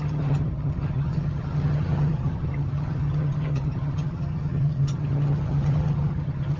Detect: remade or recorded remade